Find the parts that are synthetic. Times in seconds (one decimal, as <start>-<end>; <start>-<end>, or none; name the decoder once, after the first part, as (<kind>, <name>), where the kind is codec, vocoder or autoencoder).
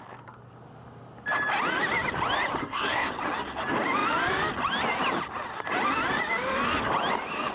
2.6-3.1 (codec, SNAC)